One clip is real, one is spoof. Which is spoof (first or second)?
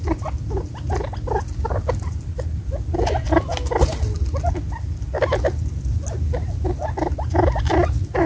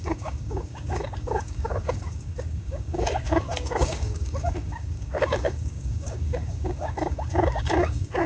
second